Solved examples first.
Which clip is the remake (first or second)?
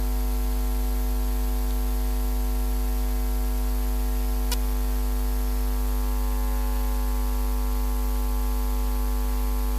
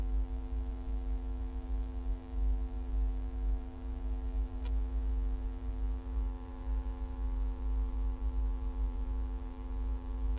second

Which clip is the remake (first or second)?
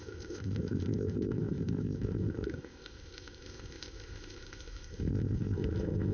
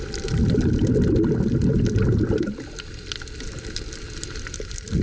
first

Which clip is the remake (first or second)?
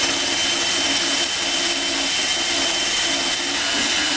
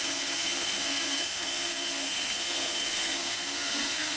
second